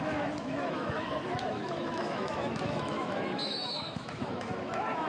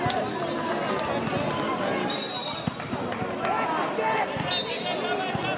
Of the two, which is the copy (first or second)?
first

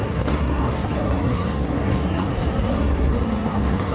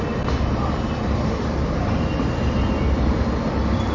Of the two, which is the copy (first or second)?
first